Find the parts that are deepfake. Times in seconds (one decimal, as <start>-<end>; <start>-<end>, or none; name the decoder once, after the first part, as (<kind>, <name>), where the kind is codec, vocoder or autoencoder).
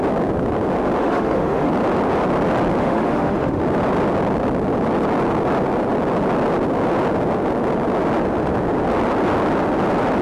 1.0-1.7 (autoencoder, DAC-VAE); 2.8-3.6